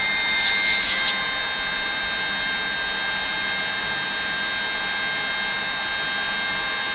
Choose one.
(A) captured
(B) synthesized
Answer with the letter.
A